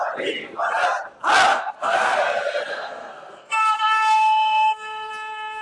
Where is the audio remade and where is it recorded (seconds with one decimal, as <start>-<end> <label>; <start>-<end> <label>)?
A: 0.0-1.5 recorded; 1.5-2.2 remade; 2.2-2.7 recorded; 2.7-5.1 remade; 5.1-5.6 recorded